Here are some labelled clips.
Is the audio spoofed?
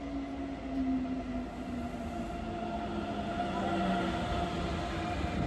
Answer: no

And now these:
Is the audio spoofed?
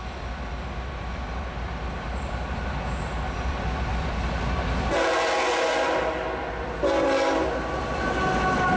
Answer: no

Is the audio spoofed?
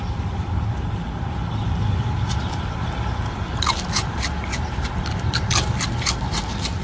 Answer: no